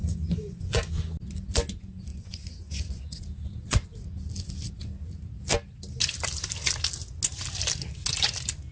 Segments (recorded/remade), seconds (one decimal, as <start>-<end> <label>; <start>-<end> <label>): 0.0-0.9 remade; 0.9-2.1 recorded; 2.1-3.2 remade; 3.2-8.7 recorded